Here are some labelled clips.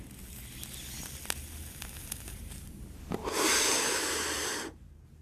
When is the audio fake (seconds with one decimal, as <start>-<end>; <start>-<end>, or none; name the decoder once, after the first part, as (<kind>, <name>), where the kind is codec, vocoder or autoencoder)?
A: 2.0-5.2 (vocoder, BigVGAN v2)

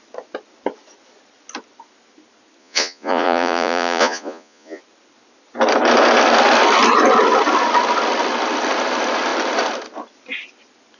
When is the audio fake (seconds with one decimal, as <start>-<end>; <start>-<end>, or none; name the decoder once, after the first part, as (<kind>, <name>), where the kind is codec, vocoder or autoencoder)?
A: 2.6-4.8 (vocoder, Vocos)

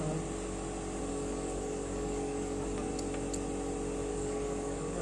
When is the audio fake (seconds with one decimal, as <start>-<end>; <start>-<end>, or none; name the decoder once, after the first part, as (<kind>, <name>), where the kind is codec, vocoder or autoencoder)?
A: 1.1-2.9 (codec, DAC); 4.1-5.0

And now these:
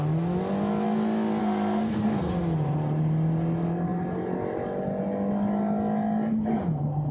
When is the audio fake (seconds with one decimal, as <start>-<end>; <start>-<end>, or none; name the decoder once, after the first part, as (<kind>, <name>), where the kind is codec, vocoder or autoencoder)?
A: 1.4-2.3 (codec, SNAC)

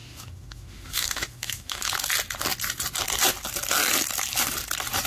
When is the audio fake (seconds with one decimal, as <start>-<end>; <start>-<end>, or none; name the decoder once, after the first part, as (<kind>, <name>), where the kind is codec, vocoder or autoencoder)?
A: 0.0-1.9 (autoencoder, DAC-VAE)

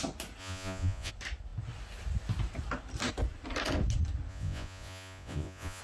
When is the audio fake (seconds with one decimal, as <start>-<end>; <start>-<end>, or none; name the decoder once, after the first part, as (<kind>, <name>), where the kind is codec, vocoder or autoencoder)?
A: 0.4-1.1 (vocoder, Vocos); 4.3-5.8

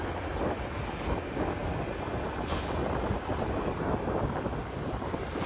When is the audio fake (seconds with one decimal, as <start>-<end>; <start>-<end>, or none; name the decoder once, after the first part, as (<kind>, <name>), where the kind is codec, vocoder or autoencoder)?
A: none

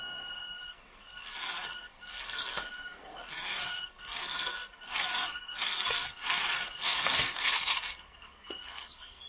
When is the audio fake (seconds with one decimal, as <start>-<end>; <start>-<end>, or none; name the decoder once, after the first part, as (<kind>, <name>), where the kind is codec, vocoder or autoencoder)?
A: 0.0-9.3 (codec, SNAC)